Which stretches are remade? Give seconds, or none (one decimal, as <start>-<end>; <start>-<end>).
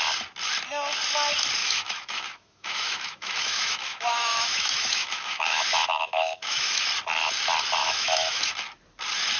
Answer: 1.6-6.8; 7.8-8.5